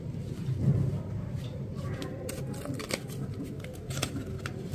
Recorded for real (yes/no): yes